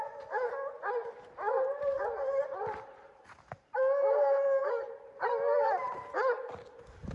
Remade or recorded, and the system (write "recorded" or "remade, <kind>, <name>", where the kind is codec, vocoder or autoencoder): recorded